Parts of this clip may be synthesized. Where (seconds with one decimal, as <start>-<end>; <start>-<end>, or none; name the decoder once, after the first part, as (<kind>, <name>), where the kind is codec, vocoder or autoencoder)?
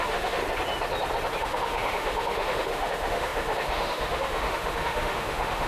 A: 0.0-0.4 (autoencoder, DAC-VAE); 1.4-5.7